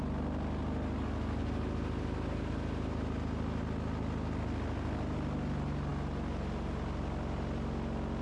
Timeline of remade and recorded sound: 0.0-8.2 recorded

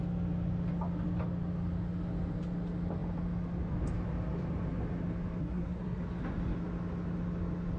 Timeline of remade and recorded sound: 0.0-5.4 recorded; 5.4-6.0 remade; 6.0-7.8 recorded

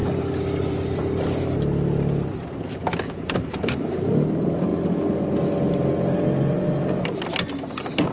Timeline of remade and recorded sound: 0.0-8.1 recorded

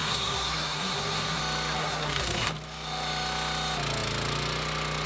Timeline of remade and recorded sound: 0.0-1.4 remade; 1.4-1.8 recorded; 1.8-2.5 remade; 2.5-5.1 recorded